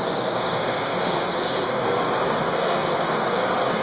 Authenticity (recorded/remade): remade